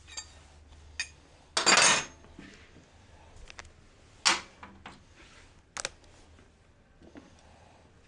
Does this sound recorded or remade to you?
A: recorded